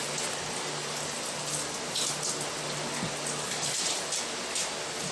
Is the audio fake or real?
real